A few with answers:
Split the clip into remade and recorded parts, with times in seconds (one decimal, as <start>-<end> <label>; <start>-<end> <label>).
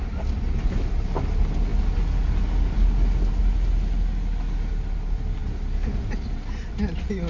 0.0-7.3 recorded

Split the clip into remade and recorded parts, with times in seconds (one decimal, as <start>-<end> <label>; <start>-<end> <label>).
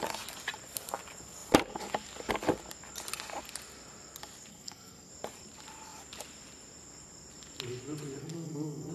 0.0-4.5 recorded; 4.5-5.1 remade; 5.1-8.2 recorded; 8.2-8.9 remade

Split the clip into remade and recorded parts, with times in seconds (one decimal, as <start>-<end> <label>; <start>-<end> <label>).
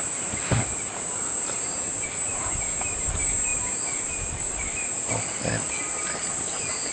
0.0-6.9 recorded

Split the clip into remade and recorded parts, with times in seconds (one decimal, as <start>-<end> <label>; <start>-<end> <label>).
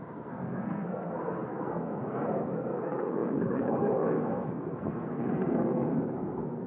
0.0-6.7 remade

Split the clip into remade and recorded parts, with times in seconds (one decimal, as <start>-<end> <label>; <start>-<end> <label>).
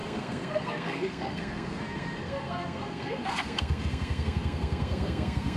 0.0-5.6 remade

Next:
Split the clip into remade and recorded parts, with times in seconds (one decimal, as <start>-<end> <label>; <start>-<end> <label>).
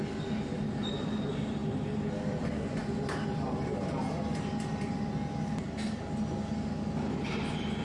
0.0-7.8 recorded